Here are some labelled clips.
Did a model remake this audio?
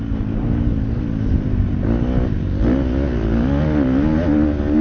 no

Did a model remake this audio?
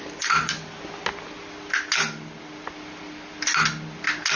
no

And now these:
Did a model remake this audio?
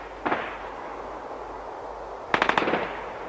no